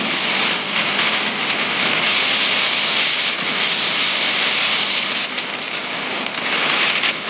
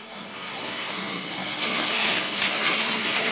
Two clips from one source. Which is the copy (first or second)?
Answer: second